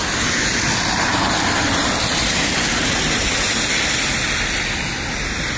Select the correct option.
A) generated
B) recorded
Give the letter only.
B